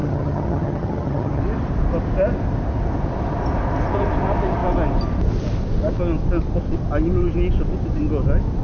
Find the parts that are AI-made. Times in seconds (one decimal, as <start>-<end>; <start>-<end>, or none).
0.0-1.4